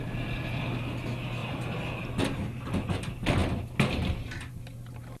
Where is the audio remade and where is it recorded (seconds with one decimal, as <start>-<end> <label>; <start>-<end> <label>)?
0.0-1.4 recorded; 1.4-3.0 remade; 3.0-5.2 recorded